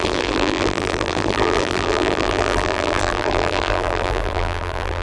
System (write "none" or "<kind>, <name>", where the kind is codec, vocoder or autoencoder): vocoder, BigVGAN v2